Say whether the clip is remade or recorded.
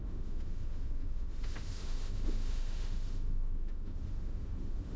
remade